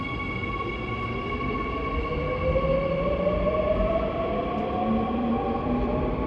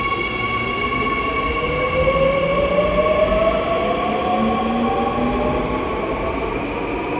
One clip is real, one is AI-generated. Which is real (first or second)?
second